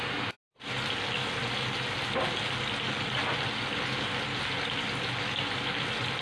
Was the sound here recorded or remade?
recorded